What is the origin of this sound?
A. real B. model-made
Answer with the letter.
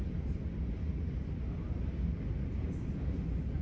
A